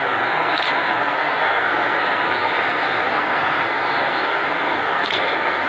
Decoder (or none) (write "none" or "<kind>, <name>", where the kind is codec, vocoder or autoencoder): codec, SNAC